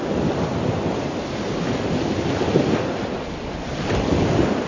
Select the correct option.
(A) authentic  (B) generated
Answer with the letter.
A